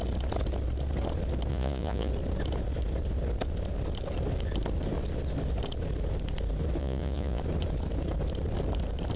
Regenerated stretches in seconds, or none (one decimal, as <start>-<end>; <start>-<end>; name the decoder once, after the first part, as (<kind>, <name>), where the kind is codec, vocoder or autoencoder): 1.5-2.1 (vocoder, Vocos); 6.8-7.4